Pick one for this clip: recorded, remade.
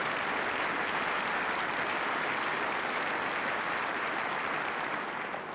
recorded